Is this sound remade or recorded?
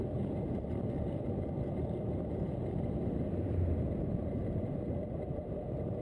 remade